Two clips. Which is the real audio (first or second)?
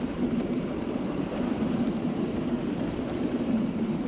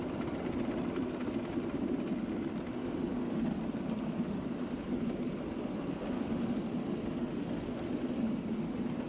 second